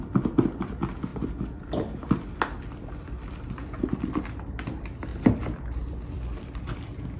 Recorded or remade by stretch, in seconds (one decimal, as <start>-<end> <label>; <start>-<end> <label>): 0.0-1.1 recorded; 1.1-1.6 remade; 1.6-5.1 recorded; 5.1-6.6 remade; 6.6-7.2 recorded